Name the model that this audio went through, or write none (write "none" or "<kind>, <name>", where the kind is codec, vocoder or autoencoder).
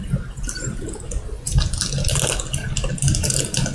none